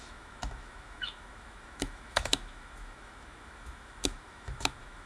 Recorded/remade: remade